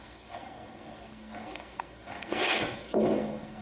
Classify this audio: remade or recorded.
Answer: remade